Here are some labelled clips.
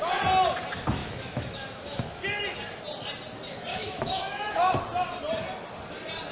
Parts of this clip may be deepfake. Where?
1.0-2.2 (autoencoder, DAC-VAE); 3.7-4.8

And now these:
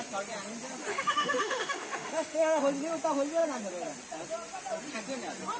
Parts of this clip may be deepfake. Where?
0.9-2.6 (autoencoder, DAC-VAE)

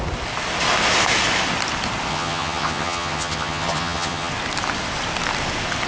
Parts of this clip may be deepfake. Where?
2.1-4.3 (vocoder, HiFi-GAN)

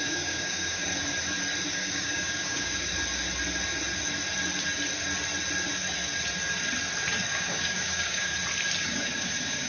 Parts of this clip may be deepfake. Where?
0.0-0.9 (codec, DAC); 1.7-2.8; 7.3-8.3; 8.8-9.7

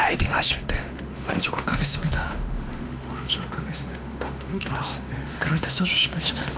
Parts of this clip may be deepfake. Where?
0.0-6.6 (autoencoder, DAC-VAE)